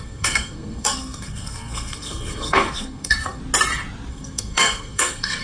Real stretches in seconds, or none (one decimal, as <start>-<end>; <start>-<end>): 3.4-4.1